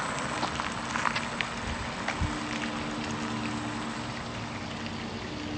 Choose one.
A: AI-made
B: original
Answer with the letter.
B